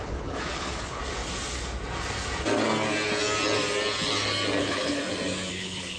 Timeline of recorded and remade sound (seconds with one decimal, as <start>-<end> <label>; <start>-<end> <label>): 0.0-1.0 remade; 1.0-4.6 recorded; 4.6-5.0 remade; 5.0-5.5 recorded; 5.5-6.0 remade